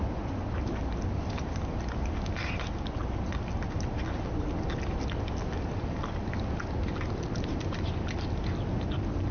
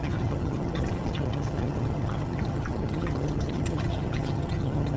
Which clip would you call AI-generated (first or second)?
second